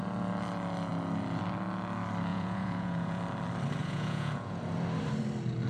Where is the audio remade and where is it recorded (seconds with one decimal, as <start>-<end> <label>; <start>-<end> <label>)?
0.0-2.3 recorded; 2.3-3.2 remade; 3.2-3.8 recorded; 3.8-4.6 remade; 4.6-5.7 recorded